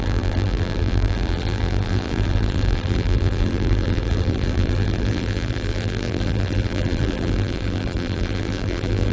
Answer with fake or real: fake